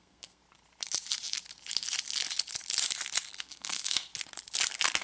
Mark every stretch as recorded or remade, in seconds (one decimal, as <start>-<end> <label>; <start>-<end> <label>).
0.0-0.4 remade; 0.4-3.4 recorded; 3.4-4.1 remade; 4.1-5.0 recorded